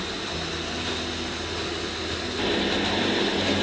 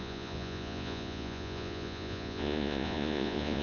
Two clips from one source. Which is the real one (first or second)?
first